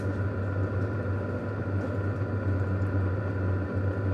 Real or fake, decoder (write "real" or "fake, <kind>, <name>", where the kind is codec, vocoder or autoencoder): real